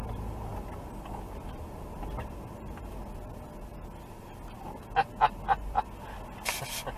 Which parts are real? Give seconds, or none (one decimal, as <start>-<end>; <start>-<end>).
0.0-7.0